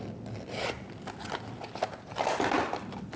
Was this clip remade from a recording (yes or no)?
no